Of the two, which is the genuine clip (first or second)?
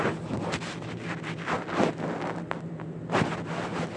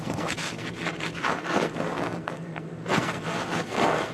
first